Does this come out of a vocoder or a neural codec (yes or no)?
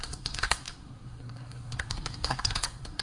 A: yes